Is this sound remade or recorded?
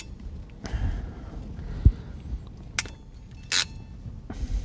recorded